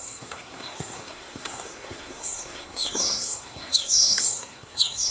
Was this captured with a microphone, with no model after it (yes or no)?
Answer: no